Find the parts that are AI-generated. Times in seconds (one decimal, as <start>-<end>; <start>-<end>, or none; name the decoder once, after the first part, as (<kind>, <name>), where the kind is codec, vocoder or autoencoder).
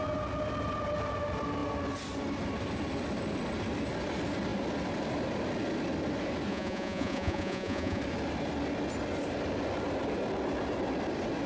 6.5-8.0 (vocoder, Vocos)